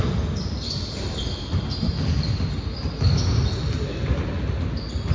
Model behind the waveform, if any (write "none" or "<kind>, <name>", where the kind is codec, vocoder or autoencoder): none